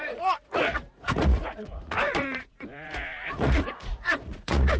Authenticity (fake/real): fake